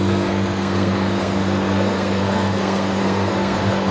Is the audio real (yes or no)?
no